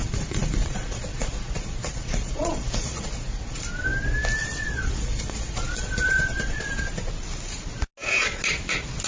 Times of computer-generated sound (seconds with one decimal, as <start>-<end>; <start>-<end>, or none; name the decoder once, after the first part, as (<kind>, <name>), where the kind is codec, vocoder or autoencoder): 0.0-3.6 (vocoder, Vocos); 4.4-6.9